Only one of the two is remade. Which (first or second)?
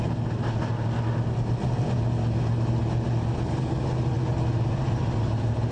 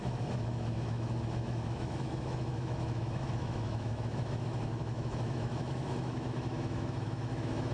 second